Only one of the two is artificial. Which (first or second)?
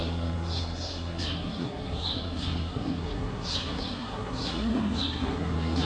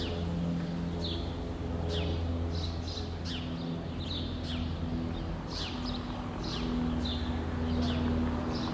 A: first